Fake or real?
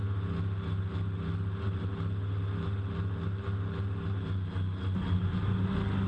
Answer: real